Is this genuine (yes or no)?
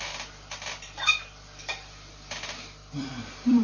no